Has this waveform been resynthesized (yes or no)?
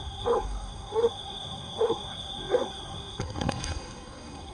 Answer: yes